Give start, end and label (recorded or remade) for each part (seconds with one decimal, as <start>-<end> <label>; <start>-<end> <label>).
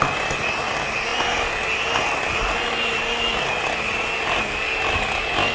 0.0-5.5 recorded